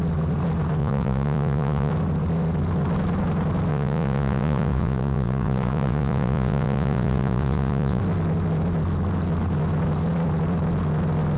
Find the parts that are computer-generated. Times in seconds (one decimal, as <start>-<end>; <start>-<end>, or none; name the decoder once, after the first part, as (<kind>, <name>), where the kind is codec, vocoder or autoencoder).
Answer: 0.8-1.9 (vocoder, Vocos); 3.7-8.0